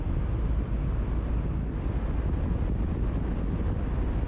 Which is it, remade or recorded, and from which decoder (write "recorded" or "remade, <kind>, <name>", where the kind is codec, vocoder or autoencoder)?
recorded